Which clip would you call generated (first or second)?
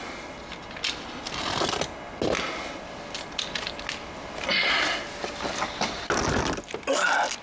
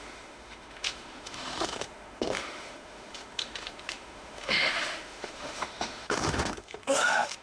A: second